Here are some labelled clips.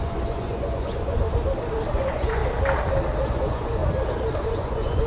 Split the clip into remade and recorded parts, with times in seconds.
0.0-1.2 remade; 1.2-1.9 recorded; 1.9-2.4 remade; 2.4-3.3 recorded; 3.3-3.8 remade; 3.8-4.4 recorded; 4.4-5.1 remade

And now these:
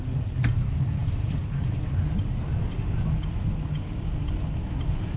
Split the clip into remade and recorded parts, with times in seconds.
0.0-2.0 remade; 2.0-5.2 recorded

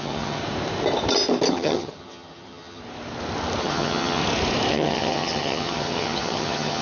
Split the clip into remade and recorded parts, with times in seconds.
0.0-0.4 remade; 0.4-1.5 recorded; 1.5-2.8 remade; 2.8-3.6 recorded; 3.6-4.2 remade; 4.2-4.7 recorded; 4.7-6.8 remade